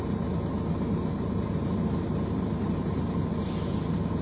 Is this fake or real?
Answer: real